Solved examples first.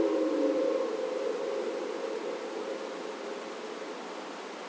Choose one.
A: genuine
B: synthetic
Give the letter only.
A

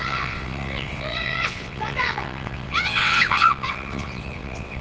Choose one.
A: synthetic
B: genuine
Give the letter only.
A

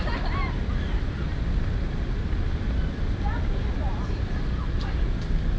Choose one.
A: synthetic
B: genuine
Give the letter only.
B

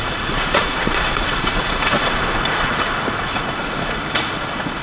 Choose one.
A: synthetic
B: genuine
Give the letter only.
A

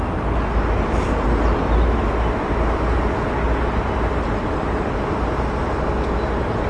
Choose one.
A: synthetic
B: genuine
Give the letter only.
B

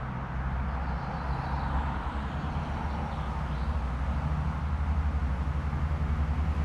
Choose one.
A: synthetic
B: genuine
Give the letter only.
B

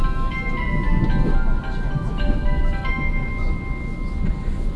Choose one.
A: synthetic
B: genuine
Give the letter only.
B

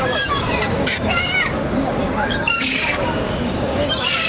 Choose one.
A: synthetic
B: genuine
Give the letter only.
A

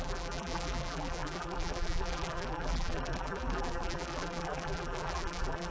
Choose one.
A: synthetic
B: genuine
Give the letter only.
A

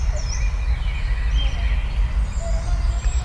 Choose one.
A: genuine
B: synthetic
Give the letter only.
A